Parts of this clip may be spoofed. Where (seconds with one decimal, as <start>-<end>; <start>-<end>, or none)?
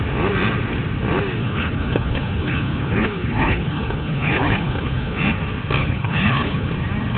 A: 1.4-5.2; 5.8-6.7